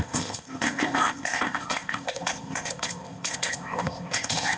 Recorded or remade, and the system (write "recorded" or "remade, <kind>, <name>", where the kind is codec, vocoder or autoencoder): remade, codec, ZipCodec